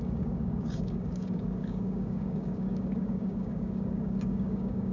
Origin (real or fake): fake